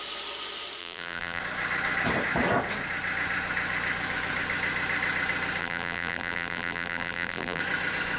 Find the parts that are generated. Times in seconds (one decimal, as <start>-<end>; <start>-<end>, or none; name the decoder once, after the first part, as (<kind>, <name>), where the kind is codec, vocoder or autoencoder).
0.8-1.4 (vocoder, BigVGAN v2); 5.6-7.6